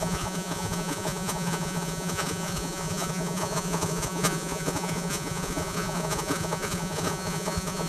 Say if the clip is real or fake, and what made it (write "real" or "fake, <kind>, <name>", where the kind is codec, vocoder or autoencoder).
fake, vocoder, Vocos